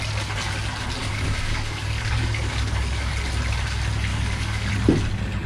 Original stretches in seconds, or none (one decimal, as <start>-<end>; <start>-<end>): 0.0-1.0; 3.1-4.1; 4.7-5.5